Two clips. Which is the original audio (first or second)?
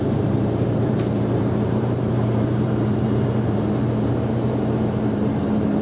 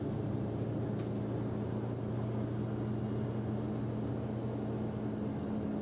second